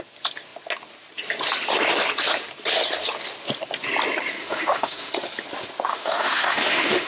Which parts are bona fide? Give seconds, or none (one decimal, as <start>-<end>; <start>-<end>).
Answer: 0.0-4.4; 5.1-5.9